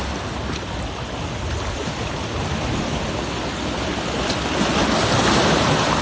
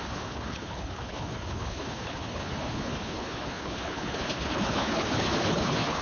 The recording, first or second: first